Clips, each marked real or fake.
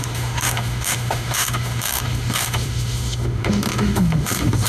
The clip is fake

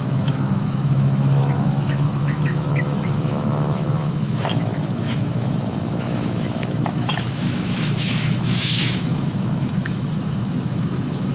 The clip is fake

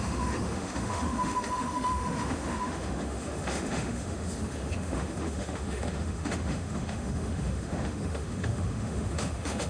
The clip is fake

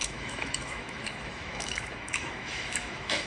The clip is fake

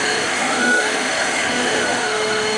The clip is fake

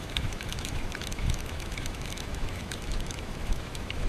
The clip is fake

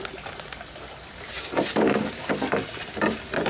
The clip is real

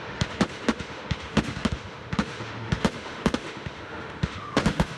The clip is fake